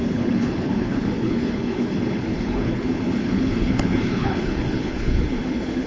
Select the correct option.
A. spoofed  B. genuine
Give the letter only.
A